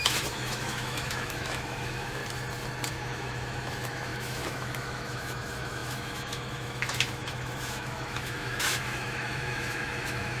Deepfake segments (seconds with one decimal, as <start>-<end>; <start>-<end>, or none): 0.0-2.2; 2.9-10.4